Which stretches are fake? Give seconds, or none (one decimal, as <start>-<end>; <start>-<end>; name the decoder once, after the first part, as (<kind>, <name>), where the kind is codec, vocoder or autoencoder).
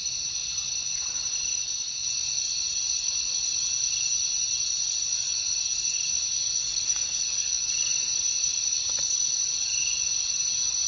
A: 6.6-7.7 (codec, SNAC)